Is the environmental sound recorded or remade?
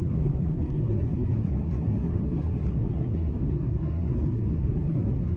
remade